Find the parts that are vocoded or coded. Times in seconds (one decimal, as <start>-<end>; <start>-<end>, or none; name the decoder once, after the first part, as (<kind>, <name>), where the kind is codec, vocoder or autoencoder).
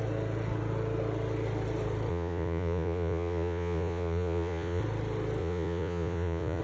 2.1-4.8 (vocoder, Vocos); 5.4-6.6